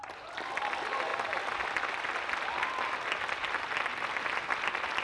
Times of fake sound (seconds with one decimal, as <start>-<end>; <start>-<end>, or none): none